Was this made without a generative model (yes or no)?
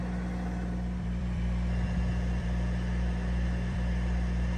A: no